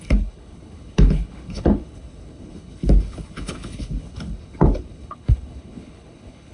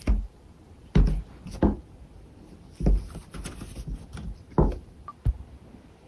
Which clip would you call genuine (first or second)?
second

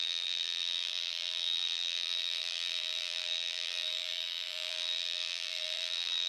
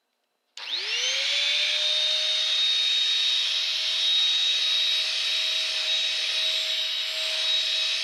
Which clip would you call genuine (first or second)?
second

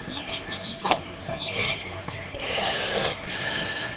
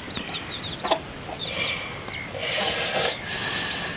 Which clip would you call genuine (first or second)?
second